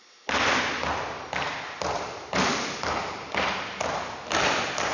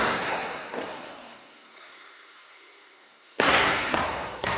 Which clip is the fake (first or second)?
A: second